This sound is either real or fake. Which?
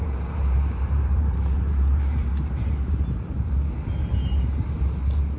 fake